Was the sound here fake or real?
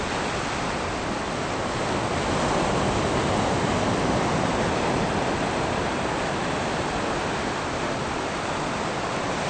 real